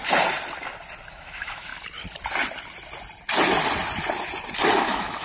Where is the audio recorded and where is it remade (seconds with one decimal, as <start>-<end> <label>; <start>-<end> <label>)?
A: 0.0-1.1 recorded; 1.1-1.7 remade; 1.7-4.8 recorded; 4.8-5.2 remade